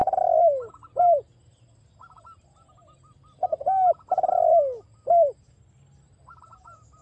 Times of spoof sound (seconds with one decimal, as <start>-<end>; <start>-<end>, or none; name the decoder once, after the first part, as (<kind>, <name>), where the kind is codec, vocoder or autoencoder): none

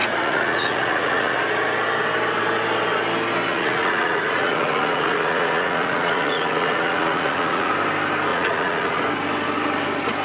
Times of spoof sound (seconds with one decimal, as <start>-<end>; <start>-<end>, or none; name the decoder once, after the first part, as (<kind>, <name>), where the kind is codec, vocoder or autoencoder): 0.0-1.4 (vocoder, Vocos); 3.5-7.7; 8.3-9.0

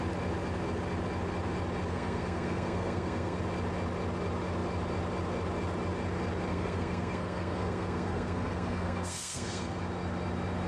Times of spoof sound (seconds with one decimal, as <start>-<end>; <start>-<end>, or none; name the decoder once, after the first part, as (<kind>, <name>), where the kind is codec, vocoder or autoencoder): 1.9-3.4 (codec, SNAC); 6.5-9.8